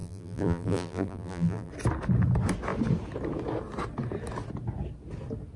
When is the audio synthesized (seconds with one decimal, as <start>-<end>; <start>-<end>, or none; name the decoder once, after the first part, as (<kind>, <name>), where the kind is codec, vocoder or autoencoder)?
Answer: 0.0-1.7 (vocoder, BigVGAN v2)